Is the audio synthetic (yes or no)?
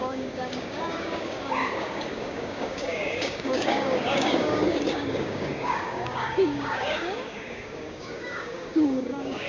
yes